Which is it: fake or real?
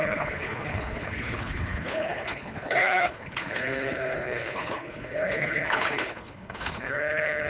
fake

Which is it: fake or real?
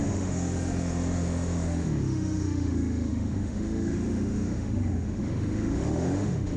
fake